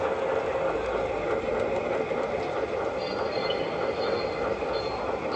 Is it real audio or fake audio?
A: real